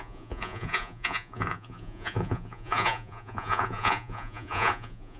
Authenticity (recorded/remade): remade